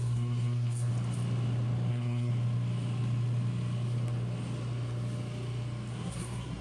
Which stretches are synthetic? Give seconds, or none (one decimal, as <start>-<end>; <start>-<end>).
0.0-0.9; 1.9-2.3; 5.9-6.6